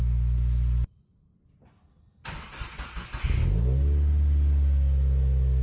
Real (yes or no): yes